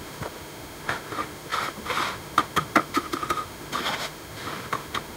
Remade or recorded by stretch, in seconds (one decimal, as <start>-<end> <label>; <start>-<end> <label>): 0.0-5.2 remade